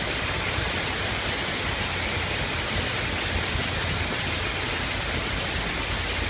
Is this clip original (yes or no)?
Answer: yes